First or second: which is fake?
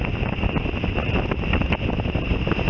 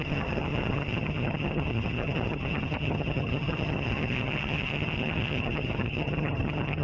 second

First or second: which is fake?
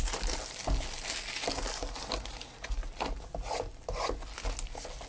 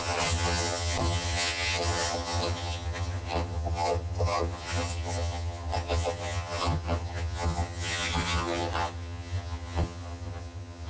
second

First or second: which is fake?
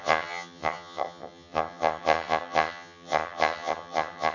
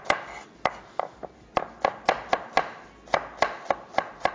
first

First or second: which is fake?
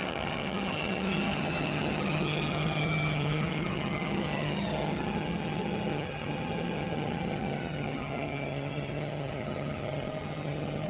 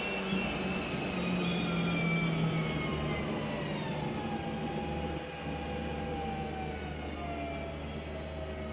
first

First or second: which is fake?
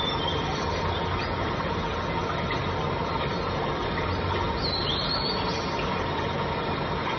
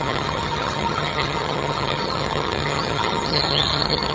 second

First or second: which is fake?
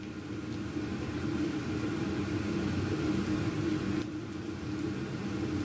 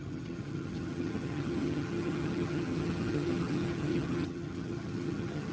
second